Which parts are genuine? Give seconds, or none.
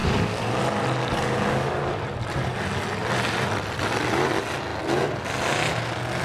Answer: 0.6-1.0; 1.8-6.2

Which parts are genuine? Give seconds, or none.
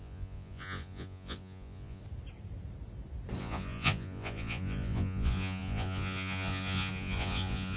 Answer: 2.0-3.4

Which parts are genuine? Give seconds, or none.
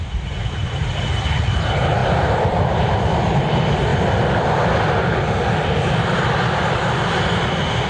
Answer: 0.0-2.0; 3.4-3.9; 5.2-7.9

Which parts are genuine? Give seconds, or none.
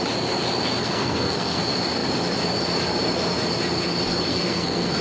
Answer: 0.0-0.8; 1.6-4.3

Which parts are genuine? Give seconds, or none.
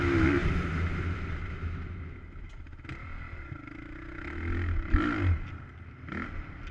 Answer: 0.0-6.7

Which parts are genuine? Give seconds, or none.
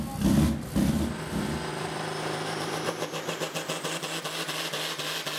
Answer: 0.0-1.7; 3.4-5.4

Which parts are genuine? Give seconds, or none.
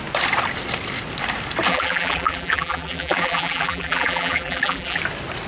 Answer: 0.0-1.7; 5.0-5.5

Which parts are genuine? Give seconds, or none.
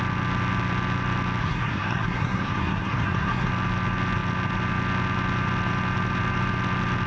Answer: 0.0-1.4; 3.5-7.1